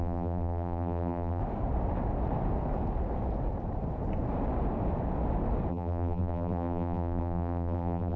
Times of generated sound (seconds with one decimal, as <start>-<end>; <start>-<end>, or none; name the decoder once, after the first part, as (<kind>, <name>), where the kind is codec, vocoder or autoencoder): 0.0-1.4 (vocoder, BigVGAN v2); 5.7-8.2